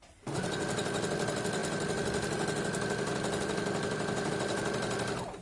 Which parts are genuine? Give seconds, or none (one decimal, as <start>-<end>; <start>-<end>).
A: 0.0-5.4